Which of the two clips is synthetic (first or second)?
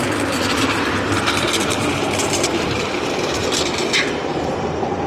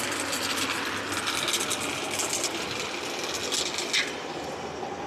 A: first